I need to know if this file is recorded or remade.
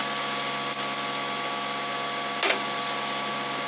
recorded